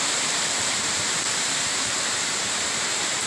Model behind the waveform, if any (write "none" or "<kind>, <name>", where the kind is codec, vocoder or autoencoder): vocoder, BigVGAN v2